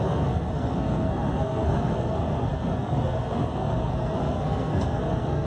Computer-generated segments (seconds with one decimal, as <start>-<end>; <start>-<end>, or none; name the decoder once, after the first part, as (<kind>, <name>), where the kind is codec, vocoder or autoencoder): 0.0-5.5 (codec, SNAC)